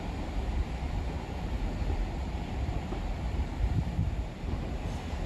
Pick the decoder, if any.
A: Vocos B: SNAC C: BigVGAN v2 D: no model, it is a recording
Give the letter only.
C